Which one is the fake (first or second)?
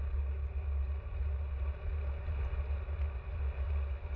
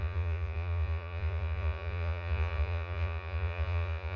second